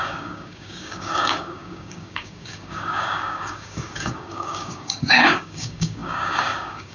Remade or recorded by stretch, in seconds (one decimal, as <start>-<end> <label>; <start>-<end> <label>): 0.0-6.9 remade